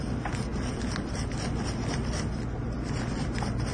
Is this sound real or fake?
real